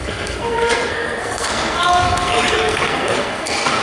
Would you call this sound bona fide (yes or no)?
no